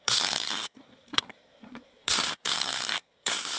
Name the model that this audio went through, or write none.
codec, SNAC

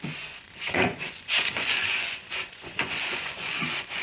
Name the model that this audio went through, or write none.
vocoder, Vocos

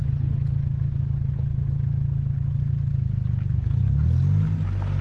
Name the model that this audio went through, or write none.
none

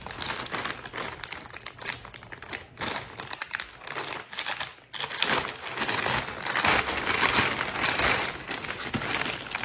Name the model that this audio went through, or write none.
none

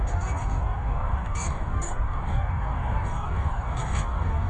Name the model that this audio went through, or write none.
codec, DAC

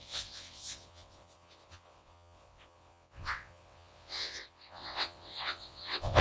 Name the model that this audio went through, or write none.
vocoder, WaveNeXt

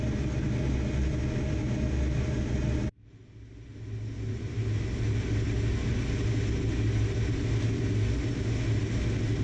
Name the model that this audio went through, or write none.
none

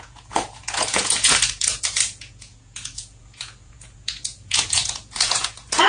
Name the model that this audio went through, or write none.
vocoder, Vocos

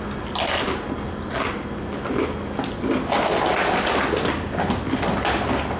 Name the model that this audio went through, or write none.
none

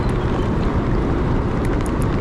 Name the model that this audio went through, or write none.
none